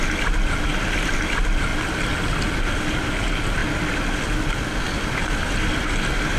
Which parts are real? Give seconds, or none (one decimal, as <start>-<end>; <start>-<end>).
0.0-6.4